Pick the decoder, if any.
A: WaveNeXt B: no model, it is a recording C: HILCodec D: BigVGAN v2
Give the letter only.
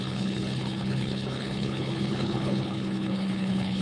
C